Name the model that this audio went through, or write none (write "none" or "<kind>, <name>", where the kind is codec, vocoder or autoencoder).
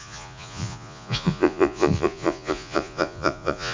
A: vocoder, Vocos